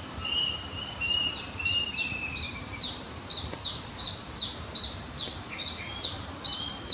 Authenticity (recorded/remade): remade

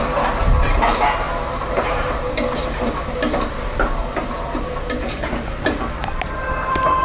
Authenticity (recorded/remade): remade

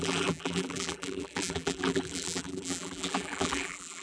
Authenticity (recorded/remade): remade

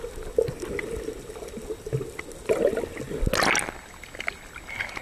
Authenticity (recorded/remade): recorded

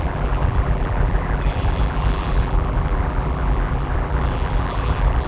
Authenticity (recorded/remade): remade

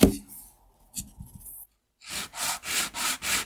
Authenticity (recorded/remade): recorded